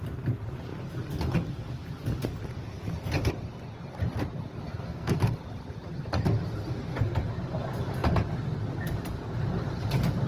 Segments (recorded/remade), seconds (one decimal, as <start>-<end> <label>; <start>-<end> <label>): 0.0-4.7 recorded; 4.7-5.3 remade; 5.3-10.3 recorded